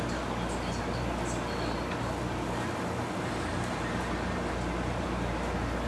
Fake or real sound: real